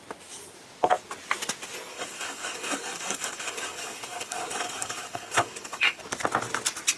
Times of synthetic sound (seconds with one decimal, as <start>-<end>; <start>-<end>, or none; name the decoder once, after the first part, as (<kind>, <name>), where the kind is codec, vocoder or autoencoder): 1.9-6.0 (codec, DAC)